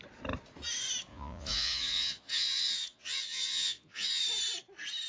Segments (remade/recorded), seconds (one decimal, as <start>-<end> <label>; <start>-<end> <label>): 0.0-1.1 recorded; 1.1-4.2 remade; 4.2-5.1 recorded